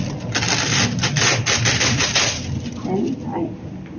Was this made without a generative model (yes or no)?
yes